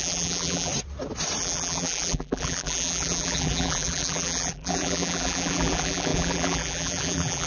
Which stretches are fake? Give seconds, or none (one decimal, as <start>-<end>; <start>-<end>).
0.0-0.7; 1.4-7.5